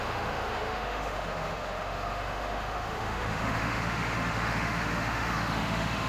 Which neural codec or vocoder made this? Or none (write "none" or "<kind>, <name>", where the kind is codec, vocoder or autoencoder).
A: autoencoder, DAC-VAE